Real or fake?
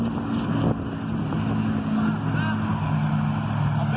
real